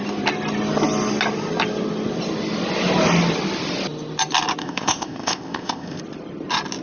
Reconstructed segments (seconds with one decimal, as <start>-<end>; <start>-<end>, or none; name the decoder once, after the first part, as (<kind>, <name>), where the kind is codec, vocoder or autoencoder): 4.6-6.0 (codec, ZipCodec)